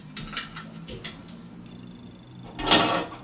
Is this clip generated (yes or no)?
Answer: no